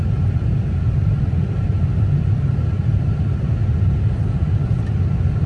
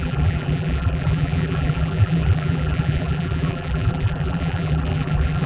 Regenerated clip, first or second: second